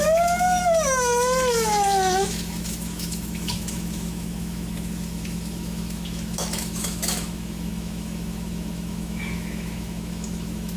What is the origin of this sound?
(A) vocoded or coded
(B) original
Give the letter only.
A